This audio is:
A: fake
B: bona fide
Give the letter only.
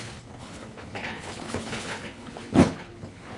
A